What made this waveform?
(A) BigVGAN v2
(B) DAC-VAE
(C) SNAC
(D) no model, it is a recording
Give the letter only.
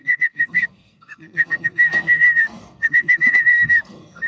C